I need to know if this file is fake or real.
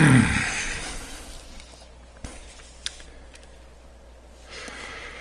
real